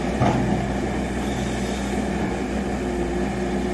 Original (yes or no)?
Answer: yes